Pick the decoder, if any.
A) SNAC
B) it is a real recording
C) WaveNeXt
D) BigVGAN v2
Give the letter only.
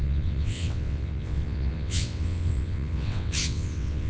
C